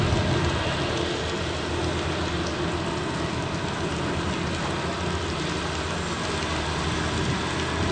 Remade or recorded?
recorded